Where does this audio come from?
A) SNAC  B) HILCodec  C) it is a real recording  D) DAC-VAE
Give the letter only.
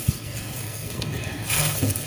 A